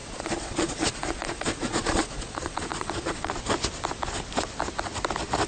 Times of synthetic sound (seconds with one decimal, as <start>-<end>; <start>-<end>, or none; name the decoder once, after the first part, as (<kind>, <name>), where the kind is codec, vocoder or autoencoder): 0.0-3.3 (vocoder, Vocos)

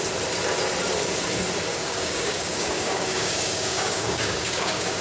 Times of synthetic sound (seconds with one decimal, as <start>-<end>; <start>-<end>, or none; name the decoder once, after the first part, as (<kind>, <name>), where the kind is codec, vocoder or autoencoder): 1.7-5.0 (codec, DAC)

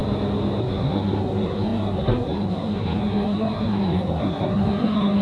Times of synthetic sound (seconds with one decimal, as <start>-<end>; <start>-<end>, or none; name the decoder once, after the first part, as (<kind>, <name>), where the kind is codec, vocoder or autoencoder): 0.6-5.2 (codec, SNAC)

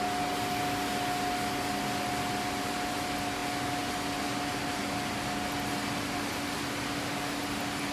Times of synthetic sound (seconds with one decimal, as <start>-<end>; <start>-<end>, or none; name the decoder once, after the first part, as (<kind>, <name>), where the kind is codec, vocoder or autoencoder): none

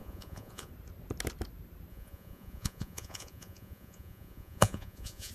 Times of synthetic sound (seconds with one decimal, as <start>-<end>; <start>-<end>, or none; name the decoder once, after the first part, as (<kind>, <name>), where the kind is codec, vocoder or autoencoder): 0.0-0.7 (vocoder, Vocos); 1.9-5.3

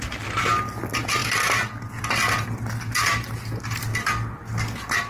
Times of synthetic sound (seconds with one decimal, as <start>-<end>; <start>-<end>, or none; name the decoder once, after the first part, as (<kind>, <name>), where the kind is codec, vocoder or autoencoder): none

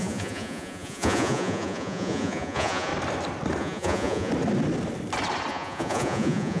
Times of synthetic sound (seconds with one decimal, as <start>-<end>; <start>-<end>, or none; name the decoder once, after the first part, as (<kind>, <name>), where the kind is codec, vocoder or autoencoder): 0.0-2.9 (vocoder, Vocos); 3.6-4.3; 5.5-6.6

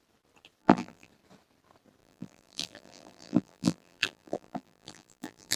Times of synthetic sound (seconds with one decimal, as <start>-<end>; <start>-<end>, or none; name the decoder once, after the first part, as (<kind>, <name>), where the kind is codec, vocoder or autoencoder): 0.6-1.1 (vocoder, BigVGAN v2); 2.0-5.6